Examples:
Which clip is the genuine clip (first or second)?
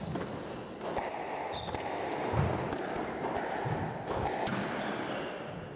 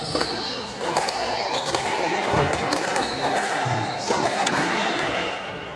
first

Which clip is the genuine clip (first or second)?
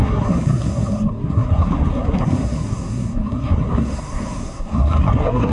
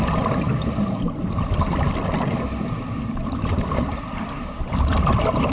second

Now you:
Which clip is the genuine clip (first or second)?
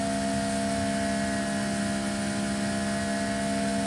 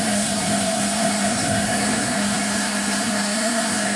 first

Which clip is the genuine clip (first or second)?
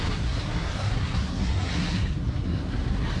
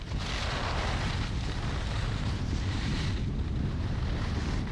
second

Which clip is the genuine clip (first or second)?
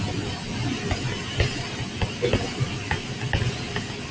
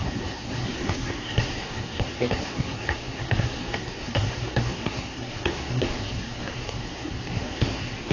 first